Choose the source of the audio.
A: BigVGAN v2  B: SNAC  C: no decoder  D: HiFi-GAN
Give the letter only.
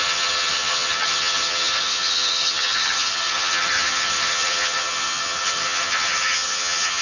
D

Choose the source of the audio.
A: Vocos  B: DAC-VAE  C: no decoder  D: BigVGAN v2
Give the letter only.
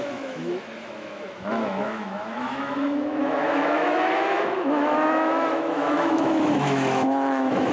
B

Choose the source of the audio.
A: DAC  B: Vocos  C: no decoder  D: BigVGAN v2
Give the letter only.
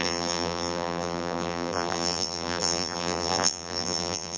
D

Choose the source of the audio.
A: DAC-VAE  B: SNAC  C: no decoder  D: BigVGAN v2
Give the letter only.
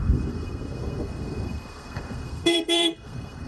B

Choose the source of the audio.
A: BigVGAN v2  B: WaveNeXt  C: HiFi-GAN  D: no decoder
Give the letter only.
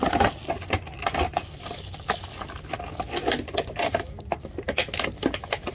D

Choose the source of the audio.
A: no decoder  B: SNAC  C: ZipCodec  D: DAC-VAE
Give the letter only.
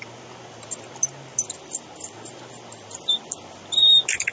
A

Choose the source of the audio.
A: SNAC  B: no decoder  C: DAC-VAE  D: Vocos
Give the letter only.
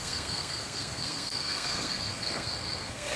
A